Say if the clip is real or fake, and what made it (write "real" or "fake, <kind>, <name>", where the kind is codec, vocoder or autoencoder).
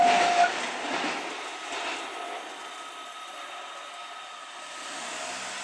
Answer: real